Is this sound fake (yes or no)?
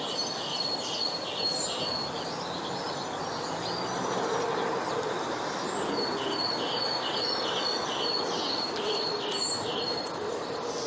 no